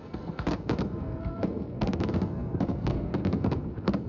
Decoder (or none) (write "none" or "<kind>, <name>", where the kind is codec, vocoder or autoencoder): codec, SNAC